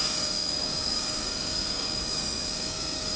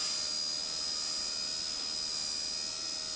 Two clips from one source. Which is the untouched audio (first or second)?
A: second